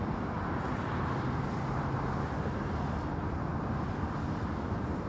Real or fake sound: real